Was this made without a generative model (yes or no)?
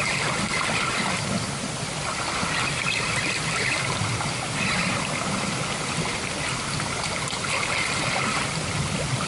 yes